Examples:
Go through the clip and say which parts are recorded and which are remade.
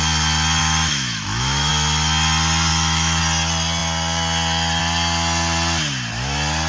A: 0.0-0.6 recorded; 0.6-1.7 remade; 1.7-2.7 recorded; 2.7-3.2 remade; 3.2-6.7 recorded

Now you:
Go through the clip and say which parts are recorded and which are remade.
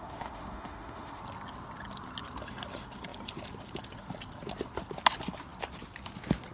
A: 0.0-1.2 remade; 1.2-6.5 recorded